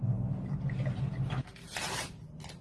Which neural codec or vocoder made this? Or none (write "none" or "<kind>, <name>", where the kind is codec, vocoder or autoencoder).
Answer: none